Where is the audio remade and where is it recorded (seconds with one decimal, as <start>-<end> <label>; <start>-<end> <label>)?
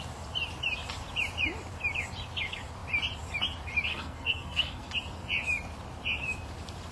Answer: 0.0-3.9 recorded; 3.9-4.9 remade; 4.9-6.9 recorded